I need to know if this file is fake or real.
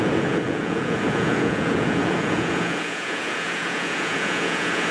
fake